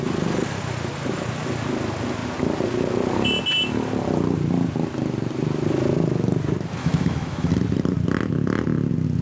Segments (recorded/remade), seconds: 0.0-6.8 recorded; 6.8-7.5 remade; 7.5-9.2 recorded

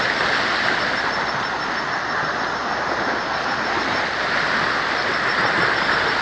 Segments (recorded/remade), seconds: 0.0-2.6 recorded; 2.6-4.3 remade; 4.3-6.2 recorded

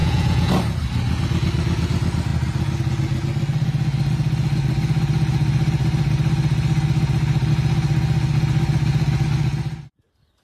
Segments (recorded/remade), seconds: 0.0-0.5 remade; 0.5-10.4 recorded